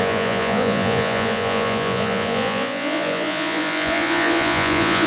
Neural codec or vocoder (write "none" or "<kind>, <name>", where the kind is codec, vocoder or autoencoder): vocoder, Vocos